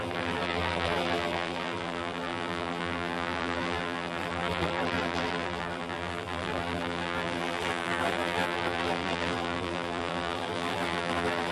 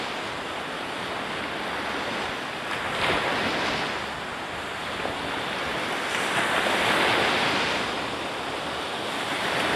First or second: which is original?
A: second